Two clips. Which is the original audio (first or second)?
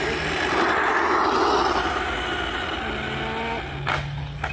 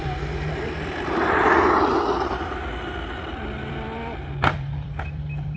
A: first